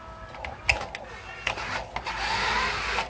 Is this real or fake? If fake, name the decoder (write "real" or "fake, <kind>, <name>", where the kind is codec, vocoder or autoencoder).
real